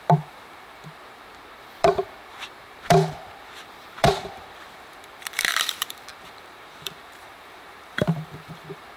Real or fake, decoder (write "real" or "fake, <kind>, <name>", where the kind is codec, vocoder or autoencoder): fake, vocoder, BigVGAN v2